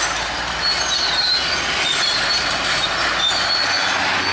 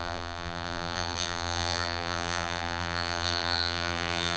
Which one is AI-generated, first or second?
second